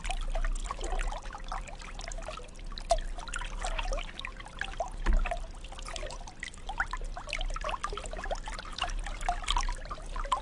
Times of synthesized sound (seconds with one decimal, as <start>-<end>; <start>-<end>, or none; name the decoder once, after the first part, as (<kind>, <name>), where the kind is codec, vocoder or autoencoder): none